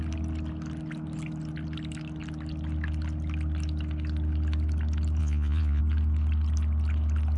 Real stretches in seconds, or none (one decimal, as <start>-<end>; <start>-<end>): 0.0-5.2; 5.8-7.4